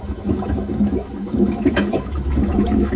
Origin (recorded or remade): remade